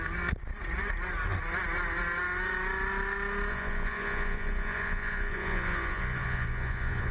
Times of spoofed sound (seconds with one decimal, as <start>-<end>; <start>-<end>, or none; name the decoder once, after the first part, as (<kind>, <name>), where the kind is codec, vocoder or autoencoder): 3.5-7.1 (vocoder, Vocos)